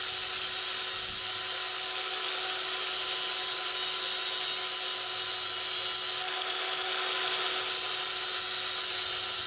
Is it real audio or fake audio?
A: real